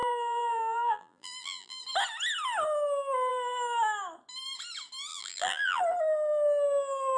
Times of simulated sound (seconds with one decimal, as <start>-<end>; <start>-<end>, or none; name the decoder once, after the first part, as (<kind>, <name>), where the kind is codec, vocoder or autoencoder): 0.0-1.8 (vocoder, BigVGAN v2); 5.1-5.8